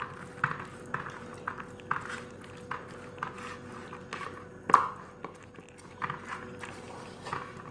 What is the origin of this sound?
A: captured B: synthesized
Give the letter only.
A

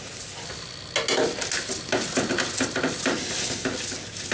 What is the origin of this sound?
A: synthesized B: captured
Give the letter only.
B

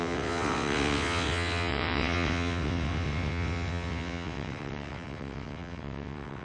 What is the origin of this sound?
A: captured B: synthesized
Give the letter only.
B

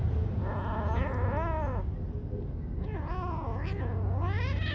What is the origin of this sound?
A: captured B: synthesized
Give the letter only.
A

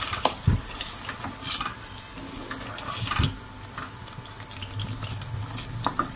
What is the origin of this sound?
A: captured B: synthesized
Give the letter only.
A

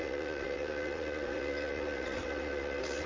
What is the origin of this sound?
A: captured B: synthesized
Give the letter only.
B